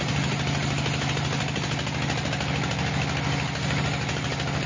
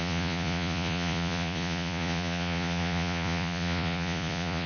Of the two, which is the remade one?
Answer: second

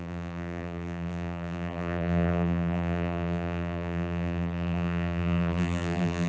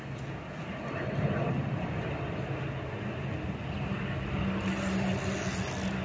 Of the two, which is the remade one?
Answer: first